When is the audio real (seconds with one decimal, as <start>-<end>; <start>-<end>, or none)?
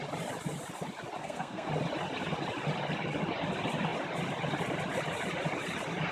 0.0-1.2; 1.7-6.1